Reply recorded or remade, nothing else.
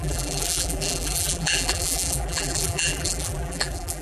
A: remade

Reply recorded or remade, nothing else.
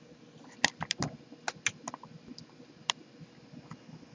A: recorded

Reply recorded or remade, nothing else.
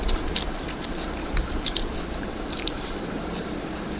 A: remade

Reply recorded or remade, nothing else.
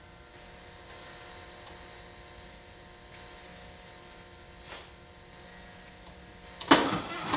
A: remade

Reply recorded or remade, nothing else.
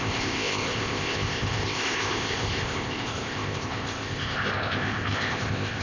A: remade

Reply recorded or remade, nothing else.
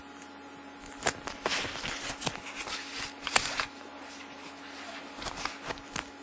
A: recorded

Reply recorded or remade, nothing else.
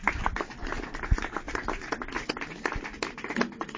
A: recorded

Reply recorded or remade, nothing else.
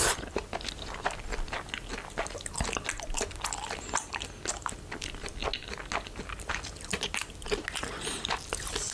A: recorded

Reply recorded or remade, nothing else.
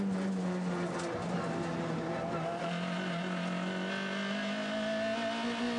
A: recorded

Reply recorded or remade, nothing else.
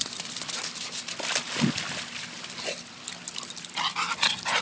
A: recorded